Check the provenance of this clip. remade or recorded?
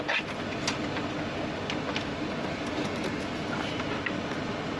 recorded